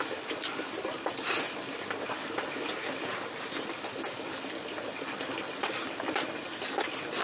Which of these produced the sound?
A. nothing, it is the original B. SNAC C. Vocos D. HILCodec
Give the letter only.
A